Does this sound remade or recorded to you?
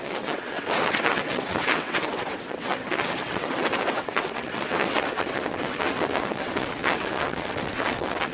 remade